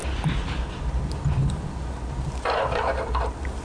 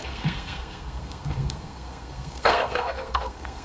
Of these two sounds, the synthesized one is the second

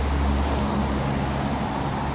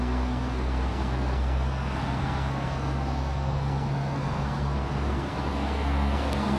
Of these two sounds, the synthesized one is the second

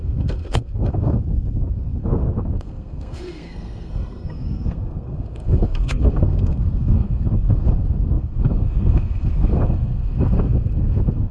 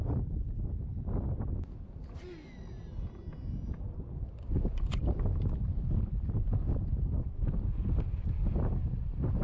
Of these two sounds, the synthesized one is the first